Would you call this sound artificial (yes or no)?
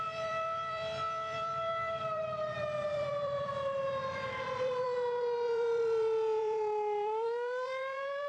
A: yes